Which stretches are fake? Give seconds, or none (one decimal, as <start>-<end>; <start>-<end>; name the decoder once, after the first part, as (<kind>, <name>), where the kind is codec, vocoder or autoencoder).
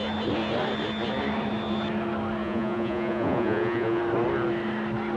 2.4-4.0 (vocoder, Vocos)